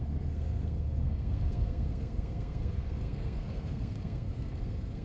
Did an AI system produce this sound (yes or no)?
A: yes